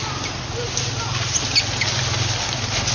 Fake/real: real